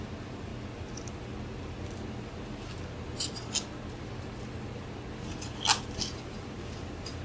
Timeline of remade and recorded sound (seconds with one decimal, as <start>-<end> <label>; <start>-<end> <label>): 0.0-7.2 recorded